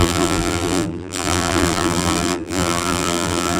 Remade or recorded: remade